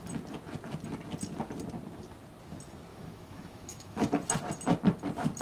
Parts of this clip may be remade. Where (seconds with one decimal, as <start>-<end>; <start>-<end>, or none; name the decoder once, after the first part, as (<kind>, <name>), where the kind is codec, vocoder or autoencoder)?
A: 2.9-4.1 (autoencoder, DAC-VAE)